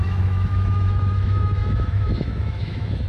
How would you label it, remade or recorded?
remade